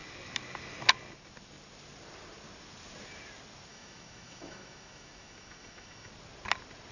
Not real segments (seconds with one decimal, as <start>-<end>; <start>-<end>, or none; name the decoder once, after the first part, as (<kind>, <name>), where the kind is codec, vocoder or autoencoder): 3.7-6.1 (autoencoder, DAC-VAE)